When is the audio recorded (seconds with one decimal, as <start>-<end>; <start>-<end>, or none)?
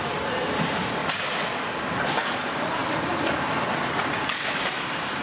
1.0-2.3